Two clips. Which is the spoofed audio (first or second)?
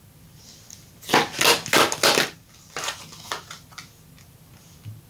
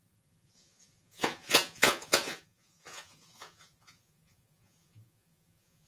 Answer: second